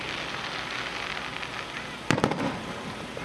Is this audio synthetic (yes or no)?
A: no